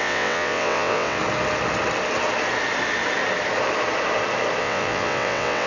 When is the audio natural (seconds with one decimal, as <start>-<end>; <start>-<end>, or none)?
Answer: 1.2-4.6